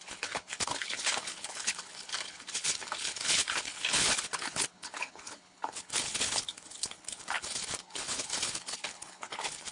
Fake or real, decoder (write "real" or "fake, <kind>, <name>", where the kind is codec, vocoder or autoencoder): fake, codec, HILCodec